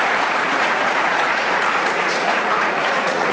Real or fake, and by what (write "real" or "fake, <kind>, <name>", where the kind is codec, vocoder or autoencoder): fake, vocoder, Vocos